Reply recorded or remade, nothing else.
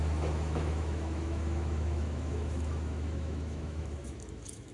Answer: remade